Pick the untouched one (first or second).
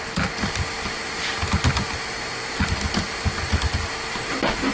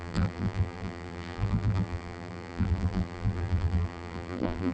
first